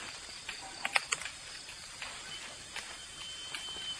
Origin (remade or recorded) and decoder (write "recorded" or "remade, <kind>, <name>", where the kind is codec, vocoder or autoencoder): recorded